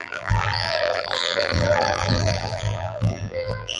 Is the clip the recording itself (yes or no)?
no